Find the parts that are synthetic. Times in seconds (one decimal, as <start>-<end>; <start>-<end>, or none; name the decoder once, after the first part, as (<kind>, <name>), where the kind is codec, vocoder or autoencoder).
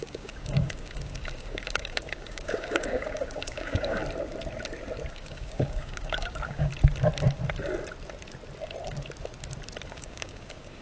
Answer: 0.0-4.0 (codec, DAC); 5.1-6.7; 9.9-10.8